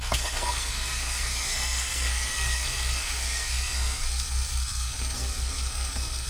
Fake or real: fake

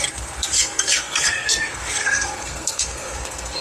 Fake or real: fake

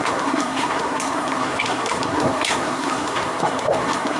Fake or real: fake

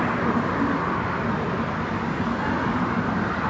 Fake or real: real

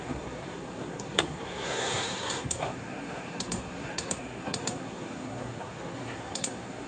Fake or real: fake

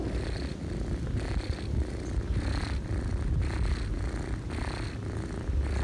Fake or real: real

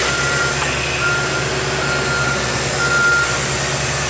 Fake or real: real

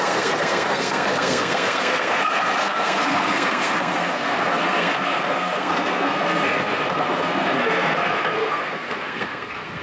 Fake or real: fake